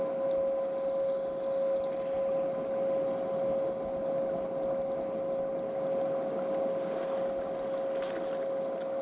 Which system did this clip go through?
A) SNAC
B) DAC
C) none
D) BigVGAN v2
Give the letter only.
C